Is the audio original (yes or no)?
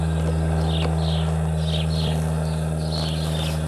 yes